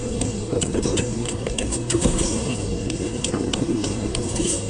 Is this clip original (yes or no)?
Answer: no